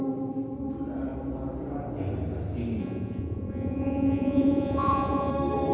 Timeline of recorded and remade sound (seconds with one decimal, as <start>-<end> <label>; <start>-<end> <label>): 0.0-2.8 recorded; 2.8-5.3 remade; 5.3-5.7 recorded